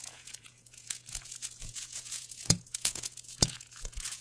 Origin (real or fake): fake